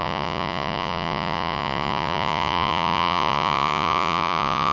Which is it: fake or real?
fake